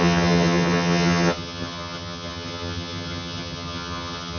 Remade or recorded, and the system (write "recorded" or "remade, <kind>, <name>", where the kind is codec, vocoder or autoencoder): remade, vocoder, HiFi-GAN